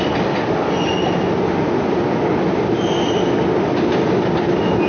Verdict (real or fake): real